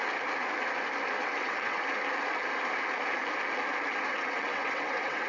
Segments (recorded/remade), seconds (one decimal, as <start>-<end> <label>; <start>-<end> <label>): 0.0-1.2 recorded; 1.2-1.8 remade; 1.8-4.1 recorded; 4.1-5.3 remade